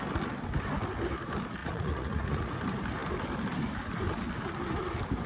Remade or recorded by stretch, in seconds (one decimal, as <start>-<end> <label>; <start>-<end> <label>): 0.0-1.6 recorded; 1.6-2.5 remade; 2.5-5.3 recorded